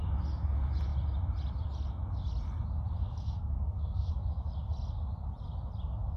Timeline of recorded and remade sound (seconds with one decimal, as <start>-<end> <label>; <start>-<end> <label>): 0.0-3.0 recorded; 3.0-4.1 remade; 4.1-6.2 recorded